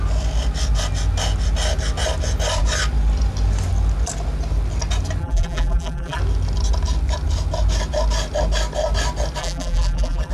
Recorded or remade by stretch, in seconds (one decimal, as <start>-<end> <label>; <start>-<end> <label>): 0.0-5.2 recorded; 5.2-6.2 remade; 6.2-9.4 recorded; 9.4-10.3 remade